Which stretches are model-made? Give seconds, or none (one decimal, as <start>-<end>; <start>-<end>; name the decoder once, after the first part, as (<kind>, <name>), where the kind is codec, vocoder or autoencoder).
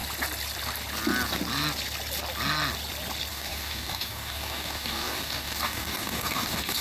3.3-6.8 (codec, DAC)